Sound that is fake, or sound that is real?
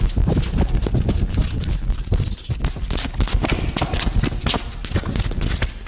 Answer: real